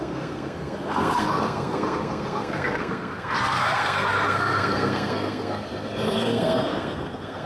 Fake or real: fake